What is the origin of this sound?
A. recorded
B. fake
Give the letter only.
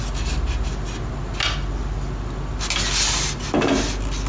A